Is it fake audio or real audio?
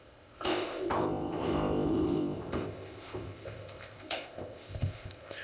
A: fake